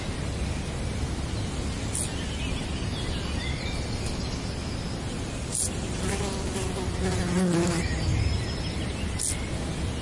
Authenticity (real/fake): real